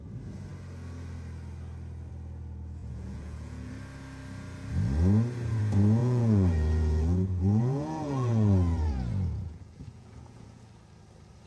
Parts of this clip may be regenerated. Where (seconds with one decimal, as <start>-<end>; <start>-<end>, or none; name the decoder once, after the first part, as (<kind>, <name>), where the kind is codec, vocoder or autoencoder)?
2.8-3.7 (vocoder, Vocos); 6.0-10.7